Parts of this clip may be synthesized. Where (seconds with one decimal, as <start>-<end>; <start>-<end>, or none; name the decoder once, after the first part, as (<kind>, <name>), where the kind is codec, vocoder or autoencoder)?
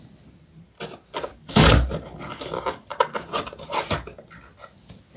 1.3-1.9 (vocoder, BigVGAN v2); 2.9-3.7